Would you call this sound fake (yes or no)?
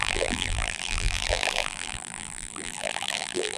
yes